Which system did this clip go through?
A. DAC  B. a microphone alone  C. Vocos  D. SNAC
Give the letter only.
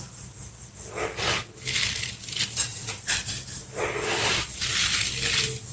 B